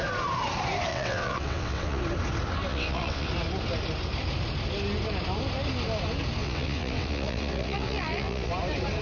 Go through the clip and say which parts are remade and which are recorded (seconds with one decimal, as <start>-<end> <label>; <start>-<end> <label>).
0.0-0.9 recorded; 0.9-2.0 remade; 2.0-2.7 recorded; 2.7-3.3 remade; 3.3-6.4 recorded; 6.4-8.5 remade; 8.5-9.0 recorded